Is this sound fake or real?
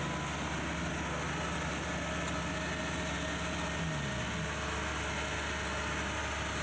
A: real